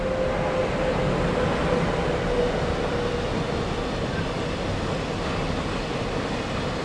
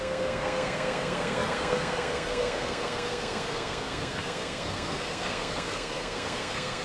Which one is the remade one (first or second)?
second